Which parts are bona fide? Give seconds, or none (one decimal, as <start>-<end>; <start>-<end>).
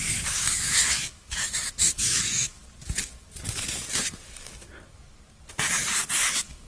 2.6-6.2